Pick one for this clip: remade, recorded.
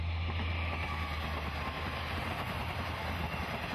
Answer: recorded